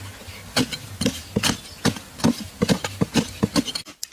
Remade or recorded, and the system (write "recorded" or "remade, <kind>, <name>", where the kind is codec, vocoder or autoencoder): recorded